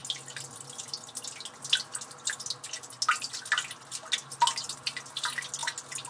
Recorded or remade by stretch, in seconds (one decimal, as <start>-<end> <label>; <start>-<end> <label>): 0.0-6.1 recorded